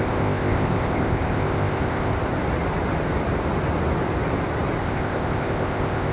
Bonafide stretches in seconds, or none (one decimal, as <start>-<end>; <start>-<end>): 2.1-4.8